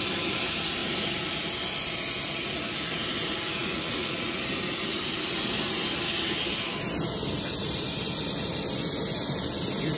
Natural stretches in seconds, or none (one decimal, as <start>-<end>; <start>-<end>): 0.0-3.6; 4.4-10.0